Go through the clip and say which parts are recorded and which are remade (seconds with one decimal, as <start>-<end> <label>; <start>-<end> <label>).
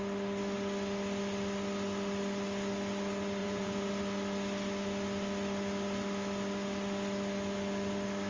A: 0.0-3.4 recorded; 3.4-3.9 remade; 3.9-8.3 recorded